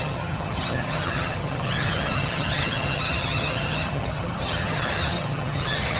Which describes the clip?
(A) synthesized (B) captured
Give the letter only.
A